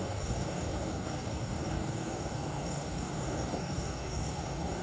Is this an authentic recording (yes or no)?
no